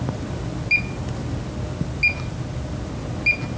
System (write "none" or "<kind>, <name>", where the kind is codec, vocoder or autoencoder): none